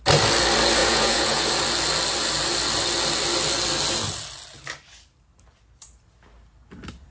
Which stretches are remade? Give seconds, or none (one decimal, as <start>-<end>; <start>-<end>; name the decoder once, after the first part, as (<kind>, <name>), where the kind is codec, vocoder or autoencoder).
0.8-1.5 (vocoder, Vocos)